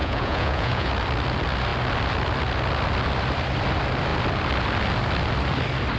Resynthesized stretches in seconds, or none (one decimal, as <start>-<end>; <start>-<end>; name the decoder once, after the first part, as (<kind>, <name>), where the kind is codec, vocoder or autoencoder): 0.0-0.9 (vocoder, Vocos)